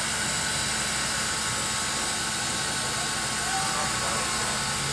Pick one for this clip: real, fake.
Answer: real